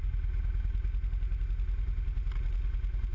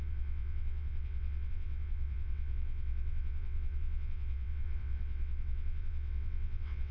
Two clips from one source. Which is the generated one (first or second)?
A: second